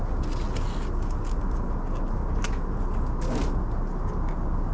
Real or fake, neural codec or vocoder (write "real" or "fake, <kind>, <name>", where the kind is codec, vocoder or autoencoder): real